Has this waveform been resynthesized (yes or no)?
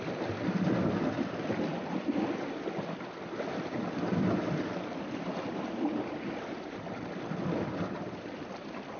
no